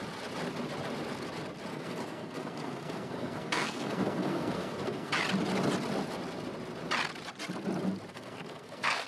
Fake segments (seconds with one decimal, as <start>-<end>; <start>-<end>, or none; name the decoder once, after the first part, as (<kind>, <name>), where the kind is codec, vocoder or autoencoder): 1.7-5.1 (codec, SNAC); 8.1-9.1

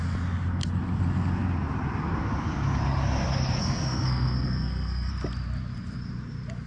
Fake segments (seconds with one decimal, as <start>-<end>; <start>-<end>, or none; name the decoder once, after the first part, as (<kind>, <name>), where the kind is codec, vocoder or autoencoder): 3.6-5.1 (codec, SNAC)

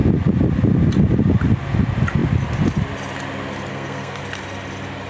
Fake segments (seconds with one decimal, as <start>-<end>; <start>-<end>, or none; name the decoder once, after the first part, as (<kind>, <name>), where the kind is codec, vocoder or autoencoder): 3.7-4.2 (codec, SNAC)

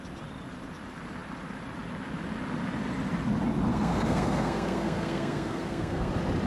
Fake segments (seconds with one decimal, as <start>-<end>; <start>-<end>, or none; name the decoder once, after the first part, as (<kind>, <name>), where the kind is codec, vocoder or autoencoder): 3.7-6.1 (codec, SNAC)